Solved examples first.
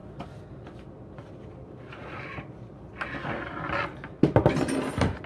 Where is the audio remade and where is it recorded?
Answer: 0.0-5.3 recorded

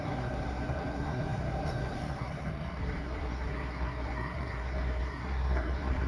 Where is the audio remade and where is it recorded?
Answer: 0.0-6.1 remade

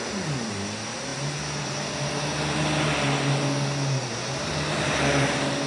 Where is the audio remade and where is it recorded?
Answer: 0.0-5.7 recorded